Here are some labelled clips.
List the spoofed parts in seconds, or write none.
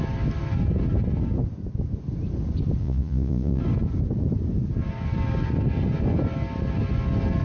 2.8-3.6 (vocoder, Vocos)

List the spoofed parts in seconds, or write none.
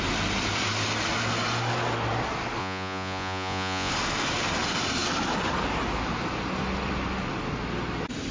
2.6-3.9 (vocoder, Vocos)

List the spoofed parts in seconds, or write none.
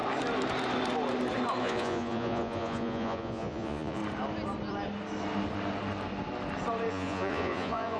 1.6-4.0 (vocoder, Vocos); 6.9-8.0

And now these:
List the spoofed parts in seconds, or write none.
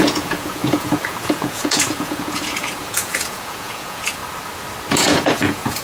0.0-4.2 (vocoder, Vocos); 4.9-5.8